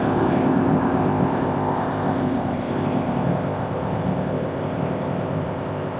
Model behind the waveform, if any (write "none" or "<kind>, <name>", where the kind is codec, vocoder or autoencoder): codec, ZipCodec